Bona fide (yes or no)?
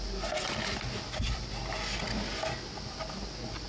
yes